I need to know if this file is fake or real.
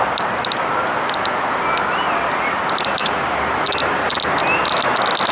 real